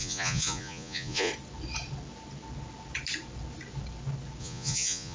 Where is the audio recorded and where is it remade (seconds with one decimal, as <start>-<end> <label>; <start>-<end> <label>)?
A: 0.0-1.3 remade; 1.3-4.4 recorded; 4.4-5.1 remade